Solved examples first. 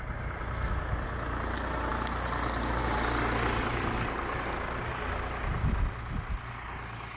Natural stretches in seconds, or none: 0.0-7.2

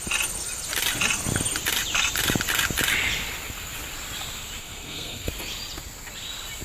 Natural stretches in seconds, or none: 0.0-4.6; 5.3-6.6